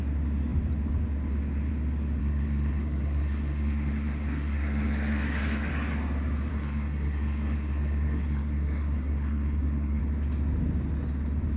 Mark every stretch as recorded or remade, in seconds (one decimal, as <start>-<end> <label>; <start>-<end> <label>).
0.0-2.2 recorded; 2.2-5.7 remade; 5.7-6.5 recorded; 6.5-10.0 remade; 10.0-11.6 recorded